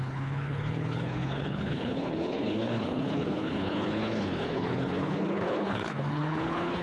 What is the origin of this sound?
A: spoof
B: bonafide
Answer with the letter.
A